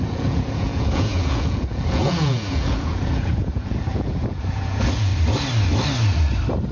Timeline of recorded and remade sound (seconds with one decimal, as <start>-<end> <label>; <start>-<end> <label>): 0.0-5.1 remade; 5.1-6.7 recorded